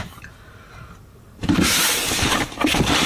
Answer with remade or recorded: remade